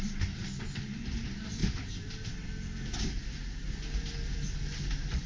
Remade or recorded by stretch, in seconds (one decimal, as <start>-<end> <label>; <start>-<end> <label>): 0.0-5.3 recorded